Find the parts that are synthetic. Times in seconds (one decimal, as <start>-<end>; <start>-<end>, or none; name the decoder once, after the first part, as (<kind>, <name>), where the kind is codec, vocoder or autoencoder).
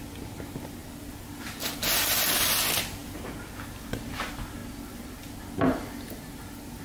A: none